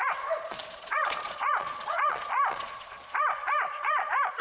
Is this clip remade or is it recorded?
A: remade